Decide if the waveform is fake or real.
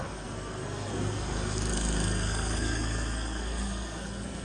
fake